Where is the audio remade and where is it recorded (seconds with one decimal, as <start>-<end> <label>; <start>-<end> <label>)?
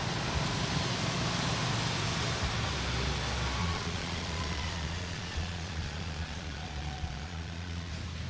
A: 0.0-3.6 recorded; 3.6-7.9 remade; 7.9-8.3 recorded